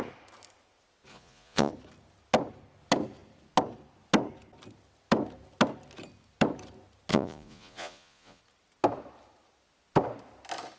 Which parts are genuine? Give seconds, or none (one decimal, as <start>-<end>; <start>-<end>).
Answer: 0.0-1.1; 1.7-7.1; 8.4-10.8